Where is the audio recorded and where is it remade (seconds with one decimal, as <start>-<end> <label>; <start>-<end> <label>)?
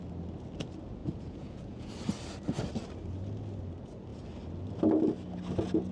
0.0-1.0 recorded; 1.0-1.9 remade; 1.9-5.9 recorded